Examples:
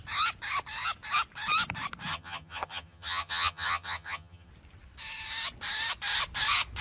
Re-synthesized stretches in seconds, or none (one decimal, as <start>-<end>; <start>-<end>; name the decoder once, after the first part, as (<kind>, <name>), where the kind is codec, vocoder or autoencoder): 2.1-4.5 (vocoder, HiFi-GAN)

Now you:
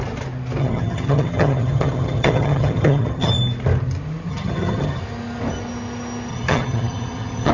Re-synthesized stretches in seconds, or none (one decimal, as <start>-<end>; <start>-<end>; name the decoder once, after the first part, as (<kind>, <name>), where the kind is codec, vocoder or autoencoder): 0.6-3.3 (vocoder, HiFi-GAN); 4.3-5.0; 6.3-7.5

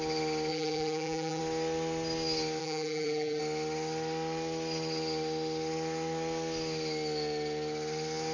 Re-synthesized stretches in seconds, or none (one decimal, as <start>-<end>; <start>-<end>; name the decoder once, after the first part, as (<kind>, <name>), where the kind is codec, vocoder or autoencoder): 0.5-1.4 (vocoder, BigVGAN v2); 2.6-3.4

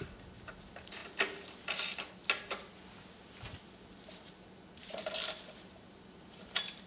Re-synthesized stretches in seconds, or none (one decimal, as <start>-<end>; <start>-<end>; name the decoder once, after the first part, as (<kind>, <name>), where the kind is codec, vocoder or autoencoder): 0.0-1.0 (vocoder, BigVGAN v2); 1.6-2.2; 4.7-6.9

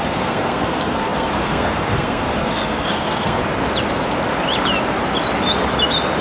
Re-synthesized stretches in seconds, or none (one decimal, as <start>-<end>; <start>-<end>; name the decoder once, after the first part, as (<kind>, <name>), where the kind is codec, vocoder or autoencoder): 0.0-3.4 (codec, SNAC)